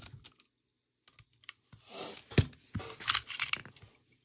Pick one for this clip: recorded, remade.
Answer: recorded